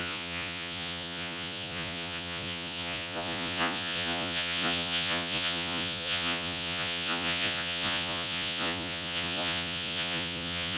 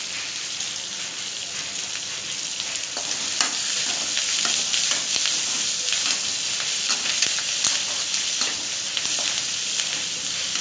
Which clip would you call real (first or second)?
second